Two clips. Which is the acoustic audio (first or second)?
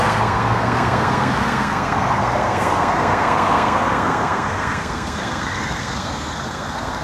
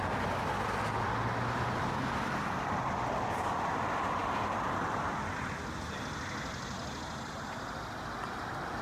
second